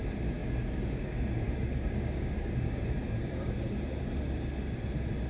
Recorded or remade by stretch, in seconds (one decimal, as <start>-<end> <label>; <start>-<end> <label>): 0.0-0.4 recorded; 0.4-3.6 remade; 3.6-5.3 recorded